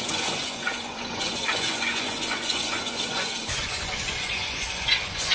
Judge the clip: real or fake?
fake